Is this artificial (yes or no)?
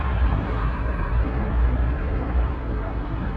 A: yes